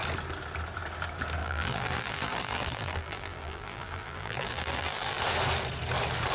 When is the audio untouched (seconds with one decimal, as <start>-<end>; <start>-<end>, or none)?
0.0-1.4; 5.2-6.3